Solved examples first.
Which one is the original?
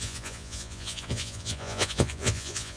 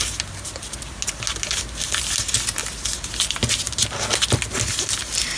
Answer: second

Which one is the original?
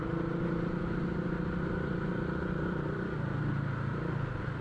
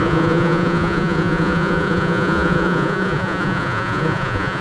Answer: first